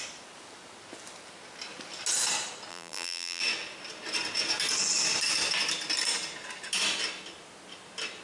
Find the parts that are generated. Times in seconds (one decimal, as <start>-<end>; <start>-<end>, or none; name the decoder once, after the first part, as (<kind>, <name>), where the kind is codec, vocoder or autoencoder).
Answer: 2.7-3.4 (vocoder, BigVGAN v2)